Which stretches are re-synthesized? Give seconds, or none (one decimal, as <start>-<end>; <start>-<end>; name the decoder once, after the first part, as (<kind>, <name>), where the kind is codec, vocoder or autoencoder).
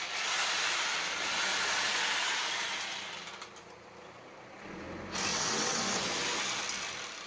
5.3-5.8 (vocoder, WaveNeXt)